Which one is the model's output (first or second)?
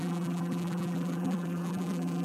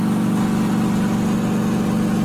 first